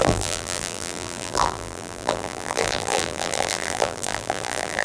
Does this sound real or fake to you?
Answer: fake